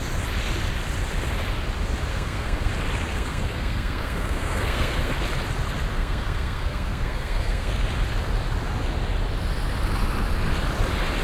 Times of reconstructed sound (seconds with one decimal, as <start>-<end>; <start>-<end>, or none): 2.1-2.7; 3.1-5.1; 5.9-7.7